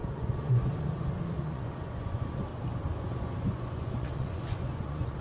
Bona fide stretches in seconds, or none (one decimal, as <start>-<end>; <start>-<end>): 2.5-3.1